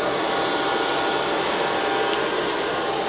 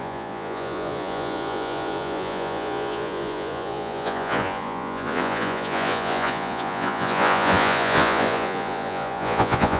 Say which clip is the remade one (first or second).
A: second